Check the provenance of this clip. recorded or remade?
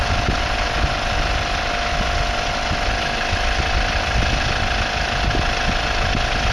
recorded